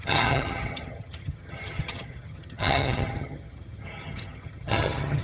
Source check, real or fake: fake